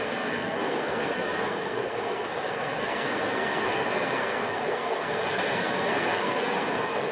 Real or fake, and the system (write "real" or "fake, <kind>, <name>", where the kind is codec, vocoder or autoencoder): fake, codec, SNAC